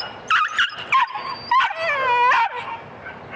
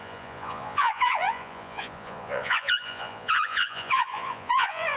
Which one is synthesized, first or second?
second